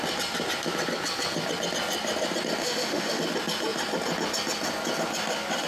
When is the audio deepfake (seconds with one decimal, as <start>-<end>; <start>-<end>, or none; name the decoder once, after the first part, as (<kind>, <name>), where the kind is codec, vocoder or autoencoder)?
2.6-3.2 (autoencoder, DAC-VAE)